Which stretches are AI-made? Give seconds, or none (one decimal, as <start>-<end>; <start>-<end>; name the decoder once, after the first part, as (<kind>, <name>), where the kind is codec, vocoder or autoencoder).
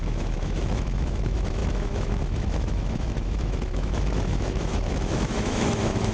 0.0-6.1 (autoencoder, DAC-VAE)